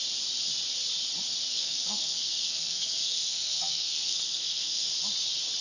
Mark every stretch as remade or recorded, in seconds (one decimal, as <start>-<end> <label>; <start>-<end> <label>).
0.0-1.5 recorded; 1.5-4.9 remade; 4.9-5.6 recorded